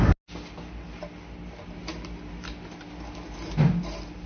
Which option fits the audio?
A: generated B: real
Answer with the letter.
B